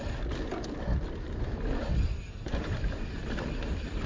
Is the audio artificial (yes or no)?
no